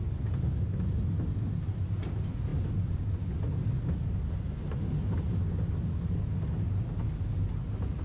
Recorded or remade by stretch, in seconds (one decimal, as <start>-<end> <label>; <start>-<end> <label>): 0.0-8.0 recorded